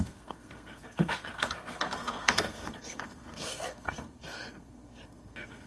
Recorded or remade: remade